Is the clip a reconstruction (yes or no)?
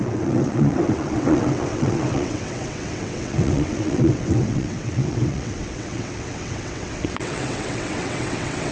yes